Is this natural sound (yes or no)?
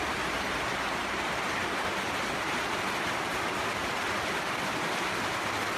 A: yes